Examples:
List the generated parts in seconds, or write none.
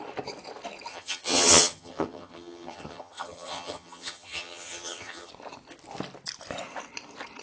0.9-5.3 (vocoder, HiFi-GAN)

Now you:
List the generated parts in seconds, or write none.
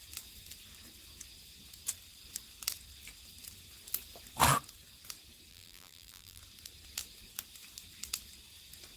5.5-6.4 (vocoder, BigVGAN v2)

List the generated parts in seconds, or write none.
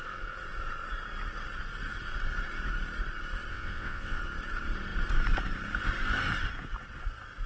3.5-4.2 (vocoder, WaveNeXt)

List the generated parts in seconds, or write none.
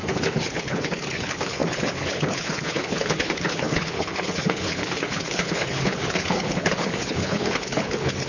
0.0-8.3 (codec, HILCodec)